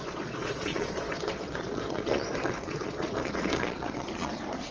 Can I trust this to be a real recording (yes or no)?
no